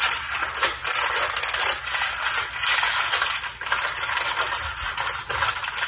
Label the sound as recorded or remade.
recorded